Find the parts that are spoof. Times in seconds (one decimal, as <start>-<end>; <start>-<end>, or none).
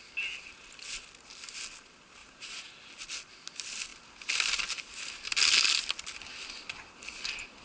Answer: 2.2-2.9